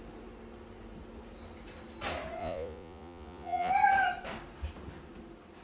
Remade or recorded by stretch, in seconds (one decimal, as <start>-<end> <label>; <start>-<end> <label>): 0.0-2.4 recorded; 2.4-3.7 remade; 3.7-5.6 recorded